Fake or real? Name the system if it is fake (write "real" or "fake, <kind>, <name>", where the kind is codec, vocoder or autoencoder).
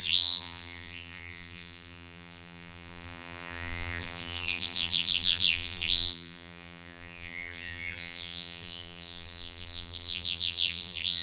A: fake, vocoder, BigVGAN v2